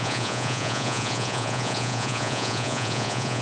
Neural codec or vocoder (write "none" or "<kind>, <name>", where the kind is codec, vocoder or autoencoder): vocoder, Vocos